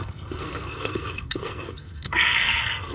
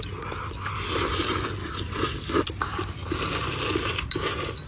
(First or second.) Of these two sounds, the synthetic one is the first